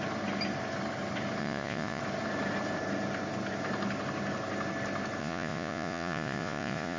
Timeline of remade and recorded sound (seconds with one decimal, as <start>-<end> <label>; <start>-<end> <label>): 0.0-1.4 recorded; 1.4-2.0 remade; 2.0-5.2 recorded; 5.2-7.0 remade